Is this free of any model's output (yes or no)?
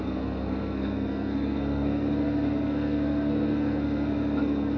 no